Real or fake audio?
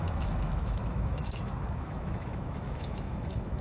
fake